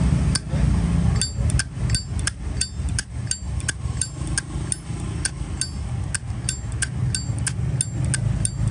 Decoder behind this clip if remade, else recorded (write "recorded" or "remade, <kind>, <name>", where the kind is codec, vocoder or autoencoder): recorded